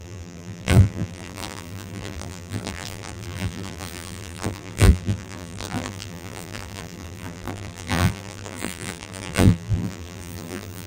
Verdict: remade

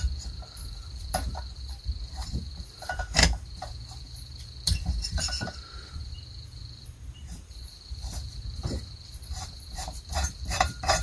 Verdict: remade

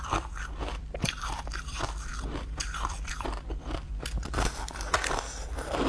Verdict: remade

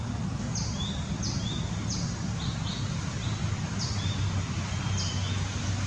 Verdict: recorded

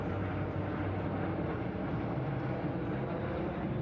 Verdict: recorded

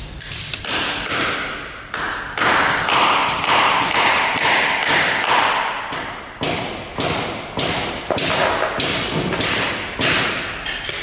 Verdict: remade